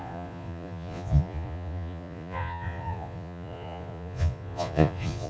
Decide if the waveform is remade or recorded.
remade